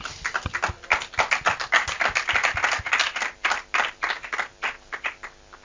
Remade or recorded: recorded